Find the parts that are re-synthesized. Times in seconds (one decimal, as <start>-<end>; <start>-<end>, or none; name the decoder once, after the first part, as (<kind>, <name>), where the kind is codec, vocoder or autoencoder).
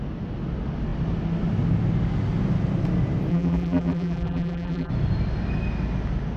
3.3-4.9 (vocoder, BigVGAN v2)